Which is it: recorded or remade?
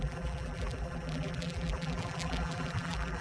remade